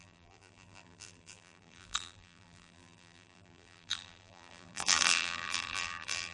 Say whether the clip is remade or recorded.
remade